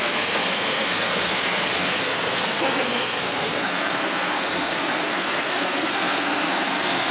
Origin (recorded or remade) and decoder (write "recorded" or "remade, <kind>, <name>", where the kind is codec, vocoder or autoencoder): remade, codec, SNAC